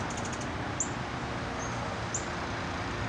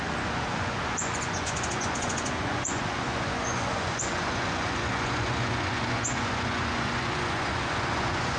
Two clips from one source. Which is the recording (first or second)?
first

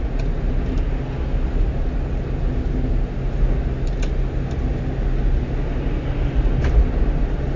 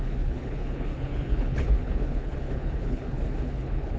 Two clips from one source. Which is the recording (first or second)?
first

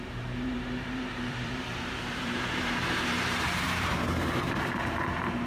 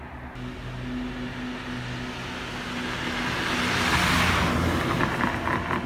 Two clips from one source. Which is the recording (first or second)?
second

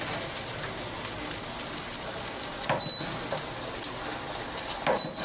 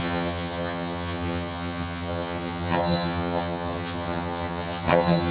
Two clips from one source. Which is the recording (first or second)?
first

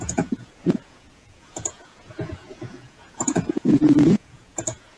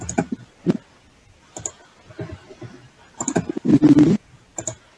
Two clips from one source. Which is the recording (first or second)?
second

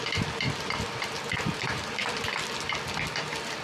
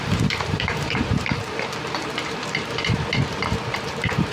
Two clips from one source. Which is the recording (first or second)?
first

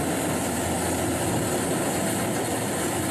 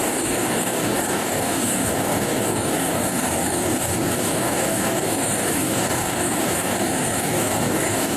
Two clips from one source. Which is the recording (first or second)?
first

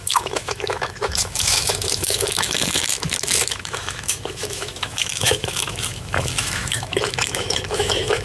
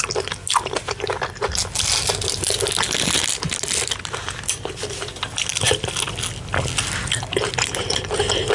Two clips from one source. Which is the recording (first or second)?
second